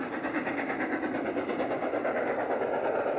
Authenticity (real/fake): real